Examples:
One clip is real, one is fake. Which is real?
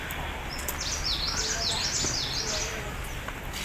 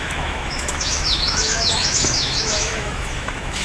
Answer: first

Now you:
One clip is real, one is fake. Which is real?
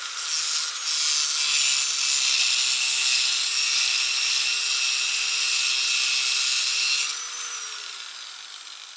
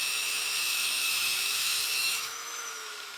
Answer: first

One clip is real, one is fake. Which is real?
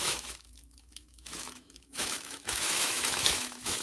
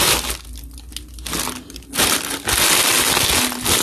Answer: second